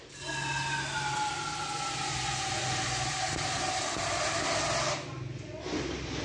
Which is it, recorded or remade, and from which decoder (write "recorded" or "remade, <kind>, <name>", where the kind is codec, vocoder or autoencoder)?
recorded